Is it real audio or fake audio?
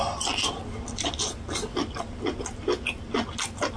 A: real